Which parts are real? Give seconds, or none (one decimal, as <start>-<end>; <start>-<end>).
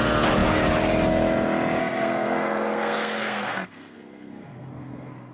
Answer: 0.0-1.8